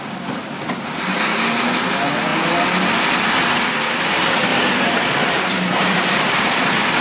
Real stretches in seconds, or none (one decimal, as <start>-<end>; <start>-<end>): 0.0-4.5; 6.3-7.0